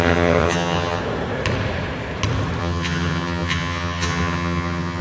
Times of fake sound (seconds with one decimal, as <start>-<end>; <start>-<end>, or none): 0.0-1.0; 2.6-5.0

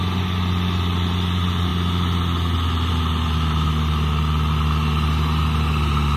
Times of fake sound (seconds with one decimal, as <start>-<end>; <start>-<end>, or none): none

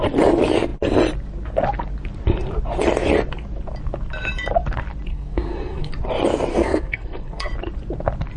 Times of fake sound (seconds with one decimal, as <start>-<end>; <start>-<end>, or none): 5.1-5.9; 6.5-7.5

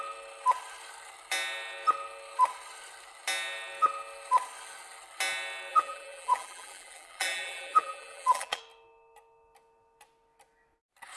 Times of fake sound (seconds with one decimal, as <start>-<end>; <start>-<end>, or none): 5.7-8.6